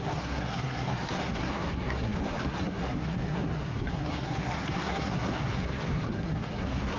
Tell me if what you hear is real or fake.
fake